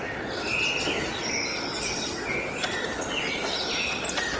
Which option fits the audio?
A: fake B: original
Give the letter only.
B